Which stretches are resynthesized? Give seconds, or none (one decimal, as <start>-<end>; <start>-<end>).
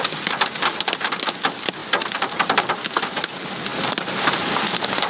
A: 1.8-2.6; 3.7-5.1